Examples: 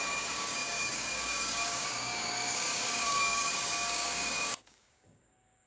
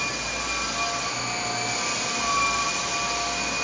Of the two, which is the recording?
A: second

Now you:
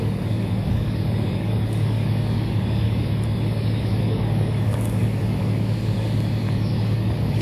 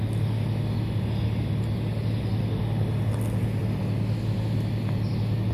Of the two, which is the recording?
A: second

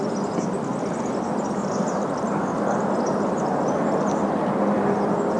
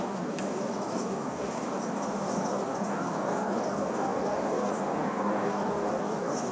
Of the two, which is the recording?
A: first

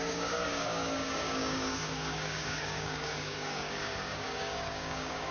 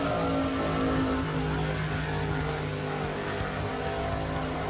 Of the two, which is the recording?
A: second